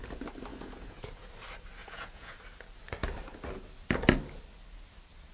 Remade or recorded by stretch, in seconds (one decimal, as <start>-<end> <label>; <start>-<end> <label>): 0.0-0.5 recorded; 0.5-1.3 remade; 1.3-1.8 recorded; 1.8-2.4 remade; 2.4-5.3 recorded